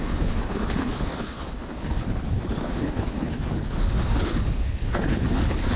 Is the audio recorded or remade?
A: remade